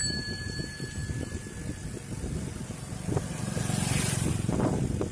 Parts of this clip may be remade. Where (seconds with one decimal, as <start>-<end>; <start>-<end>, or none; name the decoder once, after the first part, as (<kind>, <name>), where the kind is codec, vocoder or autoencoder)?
0.0-1.8 (vocoder, BigVGAN v2); 4.0-5.1